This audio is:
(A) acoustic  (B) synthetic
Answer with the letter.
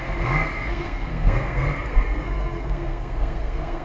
B